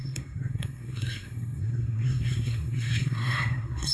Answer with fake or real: fake